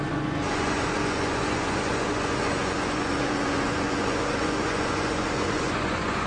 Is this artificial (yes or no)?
yes